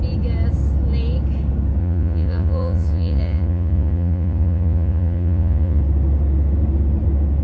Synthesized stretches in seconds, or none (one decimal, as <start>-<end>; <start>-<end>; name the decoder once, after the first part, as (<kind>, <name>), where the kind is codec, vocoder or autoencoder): 1.8-5.8 (vocoder, Vocos)